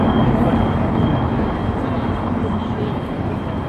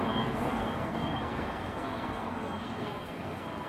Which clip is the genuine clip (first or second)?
first